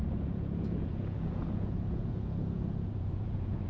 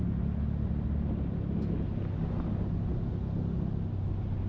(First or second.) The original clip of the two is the second